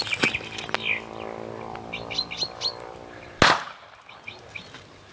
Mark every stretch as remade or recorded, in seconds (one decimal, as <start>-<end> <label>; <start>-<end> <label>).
0.0-5.1 recorded